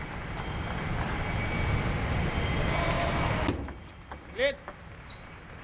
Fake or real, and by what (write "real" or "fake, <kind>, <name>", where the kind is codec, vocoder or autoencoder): real